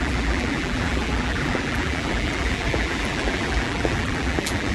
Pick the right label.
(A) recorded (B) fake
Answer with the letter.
B